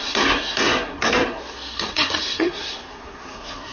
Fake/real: fake